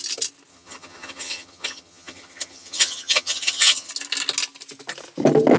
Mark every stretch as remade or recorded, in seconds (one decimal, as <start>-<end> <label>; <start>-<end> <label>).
0.0-0.5 recorded; 0.5-3.9 remade; 3.9-5.6 recorded